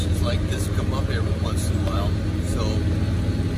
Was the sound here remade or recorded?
recorded